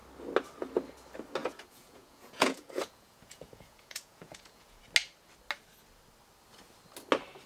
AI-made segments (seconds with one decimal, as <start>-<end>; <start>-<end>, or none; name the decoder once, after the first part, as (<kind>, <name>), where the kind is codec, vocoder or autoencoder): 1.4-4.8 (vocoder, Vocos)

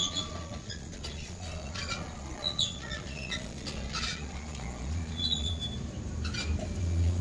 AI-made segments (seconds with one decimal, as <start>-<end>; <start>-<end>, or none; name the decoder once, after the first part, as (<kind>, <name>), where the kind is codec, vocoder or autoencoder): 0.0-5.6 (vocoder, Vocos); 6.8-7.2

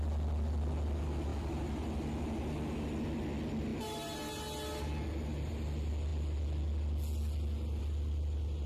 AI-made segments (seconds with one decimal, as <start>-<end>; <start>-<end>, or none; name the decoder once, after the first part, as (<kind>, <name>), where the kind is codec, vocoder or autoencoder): none